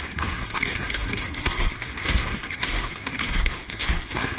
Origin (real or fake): fake